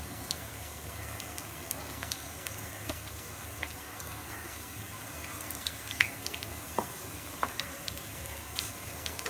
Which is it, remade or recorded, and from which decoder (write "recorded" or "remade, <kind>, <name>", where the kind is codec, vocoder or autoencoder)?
remade, codec, SNAC